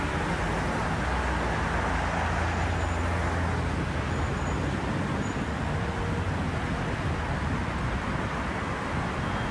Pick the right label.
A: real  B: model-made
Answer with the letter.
A